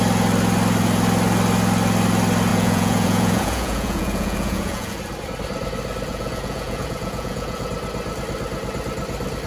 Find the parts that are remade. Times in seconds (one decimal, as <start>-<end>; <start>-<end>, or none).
2.5-5.0; 6.1-7.7

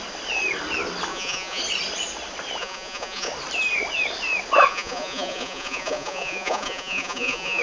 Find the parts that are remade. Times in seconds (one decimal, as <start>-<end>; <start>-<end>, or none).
1.1-1.6; 2.6-3.3; 4.7-7.6